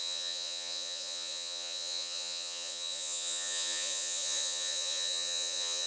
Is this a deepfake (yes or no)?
yes